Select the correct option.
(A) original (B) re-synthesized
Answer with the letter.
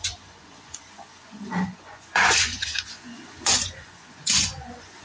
B